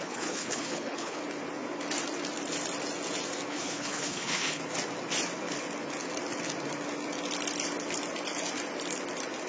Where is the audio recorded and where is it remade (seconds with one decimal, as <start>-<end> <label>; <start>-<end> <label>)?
0.0-1.2 remade; 1.2-3.5 recorded; 3.5-4.6 remade; 4.6-9.5 recorded